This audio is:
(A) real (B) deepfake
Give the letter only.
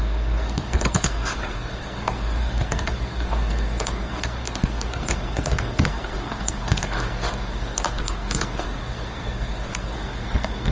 B